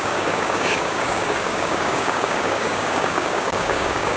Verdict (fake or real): fake